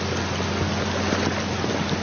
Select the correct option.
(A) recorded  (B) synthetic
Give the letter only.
A